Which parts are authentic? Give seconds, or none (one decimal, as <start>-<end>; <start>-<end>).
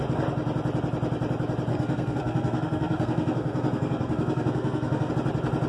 0.0-1.7; 5.1-5.7